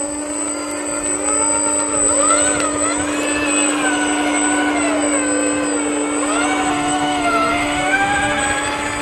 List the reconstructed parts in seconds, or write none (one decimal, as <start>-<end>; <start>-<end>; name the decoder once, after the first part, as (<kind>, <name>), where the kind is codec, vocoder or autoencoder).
6.7-8.4 (autoencoder, DAC-VAE)